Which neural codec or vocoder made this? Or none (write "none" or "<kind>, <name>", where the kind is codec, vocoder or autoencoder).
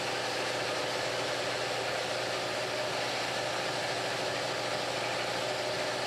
none